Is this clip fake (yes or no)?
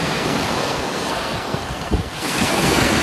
yes